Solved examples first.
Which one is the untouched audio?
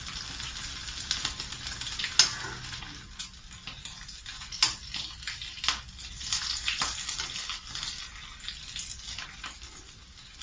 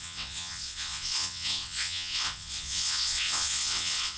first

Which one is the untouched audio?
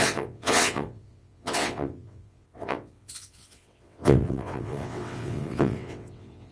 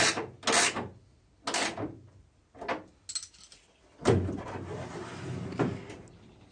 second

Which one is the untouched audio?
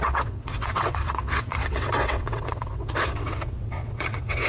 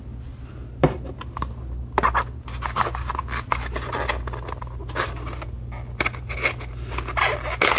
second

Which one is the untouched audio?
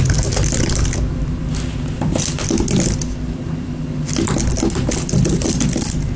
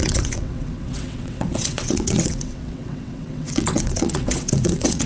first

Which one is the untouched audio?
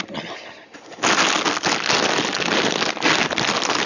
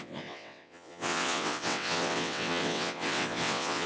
first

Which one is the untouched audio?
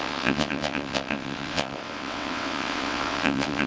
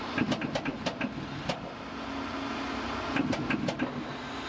second